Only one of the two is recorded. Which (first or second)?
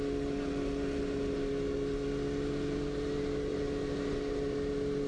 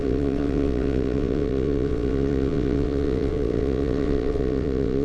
first